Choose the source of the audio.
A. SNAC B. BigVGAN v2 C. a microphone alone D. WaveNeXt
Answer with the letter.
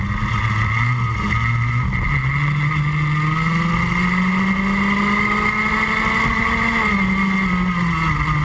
C